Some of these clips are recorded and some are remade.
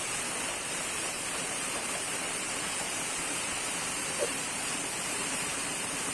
remade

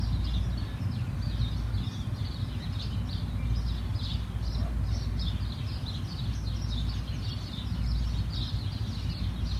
recorded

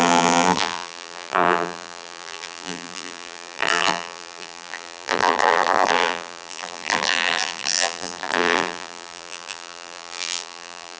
remade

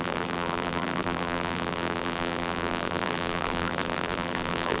remade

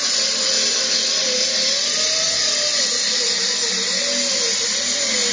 recorded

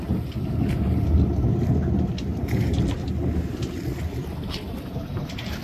recorded